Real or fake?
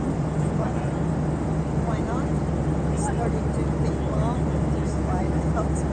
real